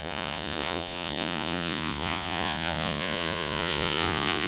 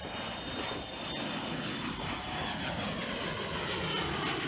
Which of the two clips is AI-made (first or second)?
first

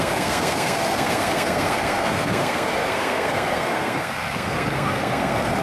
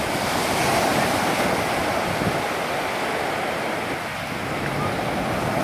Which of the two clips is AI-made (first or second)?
first